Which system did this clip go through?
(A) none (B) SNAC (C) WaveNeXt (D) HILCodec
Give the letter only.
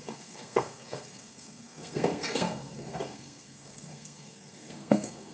B